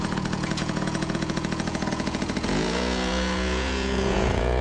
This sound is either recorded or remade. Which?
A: remade